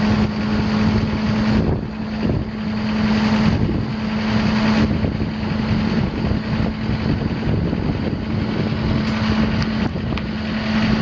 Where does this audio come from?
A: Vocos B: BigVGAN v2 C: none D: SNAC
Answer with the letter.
C